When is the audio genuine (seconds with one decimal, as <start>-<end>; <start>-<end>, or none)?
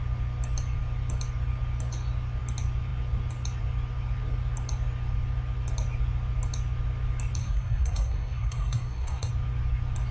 0.0-7.4; 9.3-10.1